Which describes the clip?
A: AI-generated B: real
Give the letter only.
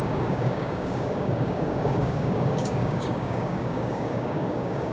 A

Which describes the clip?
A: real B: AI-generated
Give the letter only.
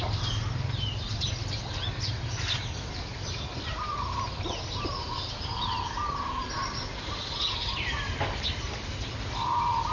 A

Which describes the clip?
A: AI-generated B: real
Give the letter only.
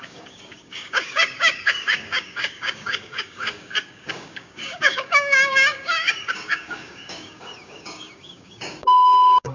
A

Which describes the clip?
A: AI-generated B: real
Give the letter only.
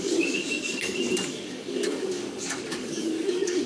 A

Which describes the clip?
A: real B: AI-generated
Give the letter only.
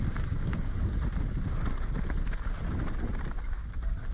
A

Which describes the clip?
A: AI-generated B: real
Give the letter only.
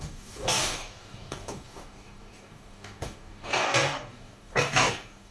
A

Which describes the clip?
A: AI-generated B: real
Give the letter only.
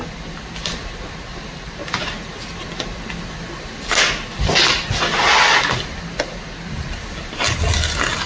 B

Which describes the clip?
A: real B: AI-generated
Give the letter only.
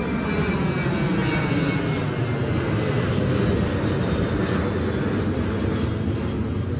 A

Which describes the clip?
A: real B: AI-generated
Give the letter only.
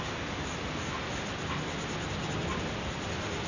A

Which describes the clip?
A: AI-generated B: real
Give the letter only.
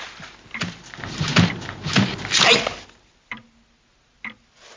B